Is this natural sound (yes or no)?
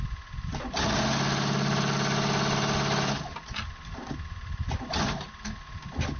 yes